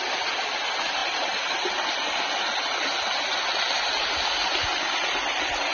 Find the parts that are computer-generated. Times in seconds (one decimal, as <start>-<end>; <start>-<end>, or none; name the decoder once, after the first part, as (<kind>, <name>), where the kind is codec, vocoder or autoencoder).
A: none